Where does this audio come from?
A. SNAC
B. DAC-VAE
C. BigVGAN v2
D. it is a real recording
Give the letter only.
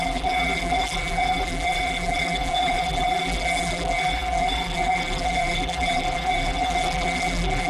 C